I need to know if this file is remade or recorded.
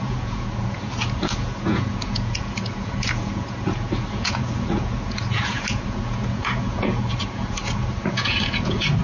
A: remade